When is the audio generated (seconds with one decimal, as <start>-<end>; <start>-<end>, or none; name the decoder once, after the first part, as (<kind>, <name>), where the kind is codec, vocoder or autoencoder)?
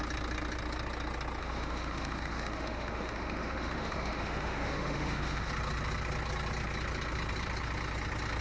1.4-5.5 (autoencoder, DAC-VAE)